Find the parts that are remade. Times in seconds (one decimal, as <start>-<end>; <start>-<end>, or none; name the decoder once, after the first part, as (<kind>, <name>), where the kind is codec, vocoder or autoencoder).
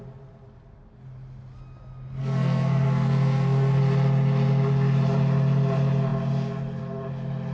2.2-3.8 (codec, SNAC)